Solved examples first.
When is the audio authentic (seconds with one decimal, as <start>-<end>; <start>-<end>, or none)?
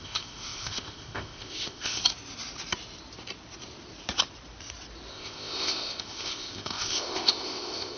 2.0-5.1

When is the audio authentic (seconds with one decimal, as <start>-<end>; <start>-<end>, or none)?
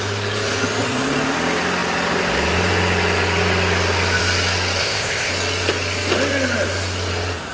0.0-4.8; 5.3-7.5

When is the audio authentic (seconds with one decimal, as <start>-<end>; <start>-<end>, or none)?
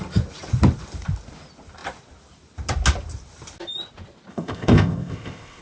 0.0-4.3